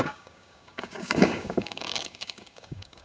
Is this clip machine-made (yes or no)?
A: yes